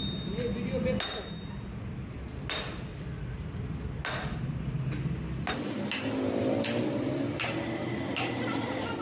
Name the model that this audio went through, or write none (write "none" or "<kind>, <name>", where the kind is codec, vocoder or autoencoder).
none